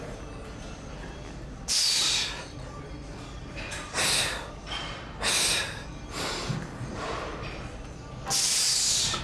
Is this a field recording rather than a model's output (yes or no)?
no